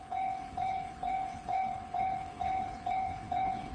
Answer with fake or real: fake